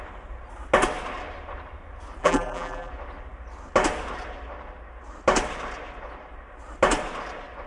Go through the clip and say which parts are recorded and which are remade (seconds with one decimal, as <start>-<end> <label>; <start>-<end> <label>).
0.0-2.2 recorded; 2.2-2.9 remade; 2.9-7.7 recorded